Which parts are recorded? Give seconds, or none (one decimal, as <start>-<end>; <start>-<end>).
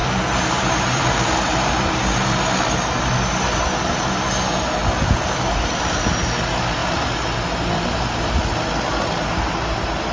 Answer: 1.7-3.9; 4.8-10.1